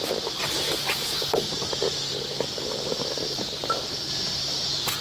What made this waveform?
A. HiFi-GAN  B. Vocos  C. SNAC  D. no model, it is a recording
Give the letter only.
D